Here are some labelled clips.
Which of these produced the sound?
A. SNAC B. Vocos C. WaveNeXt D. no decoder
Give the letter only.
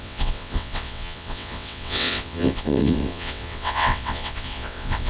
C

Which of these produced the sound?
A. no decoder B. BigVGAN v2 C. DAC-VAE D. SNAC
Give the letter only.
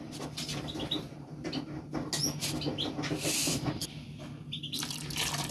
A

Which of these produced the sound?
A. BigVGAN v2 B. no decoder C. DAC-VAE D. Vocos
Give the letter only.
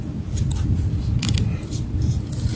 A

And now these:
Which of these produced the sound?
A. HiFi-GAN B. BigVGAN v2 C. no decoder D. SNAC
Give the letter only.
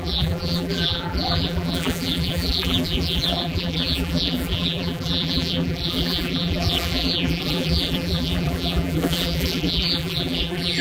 B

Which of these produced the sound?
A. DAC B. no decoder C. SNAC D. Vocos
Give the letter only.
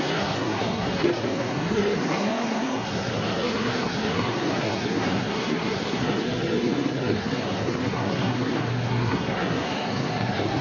C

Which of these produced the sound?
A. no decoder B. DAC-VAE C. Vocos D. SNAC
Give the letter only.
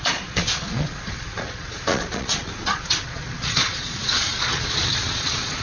C